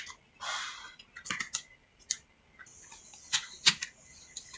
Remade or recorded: recorded